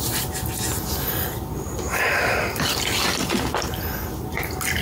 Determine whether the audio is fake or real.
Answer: real